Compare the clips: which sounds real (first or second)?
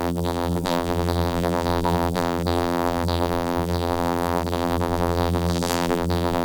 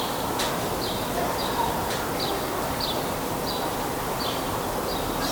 second